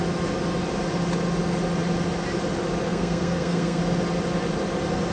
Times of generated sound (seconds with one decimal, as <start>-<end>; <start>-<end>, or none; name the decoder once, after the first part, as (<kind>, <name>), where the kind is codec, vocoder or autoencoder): 2.9-3.8 (codec, SNAC)